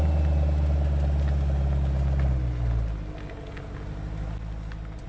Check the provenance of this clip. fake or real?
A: real